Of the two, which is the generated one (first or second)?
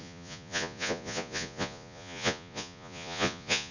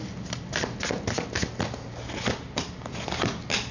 first